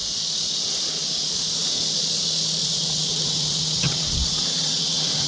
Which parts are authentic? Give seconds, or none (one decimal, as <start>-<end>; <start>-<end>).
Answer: 0.0-2.6